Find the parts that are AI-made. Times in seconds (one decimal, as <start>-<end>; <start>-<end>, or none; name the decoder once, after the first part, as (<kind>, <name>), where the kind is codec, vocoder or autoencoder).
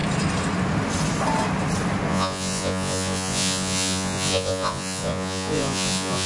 2.1-6.3 (vocoder, Vocos)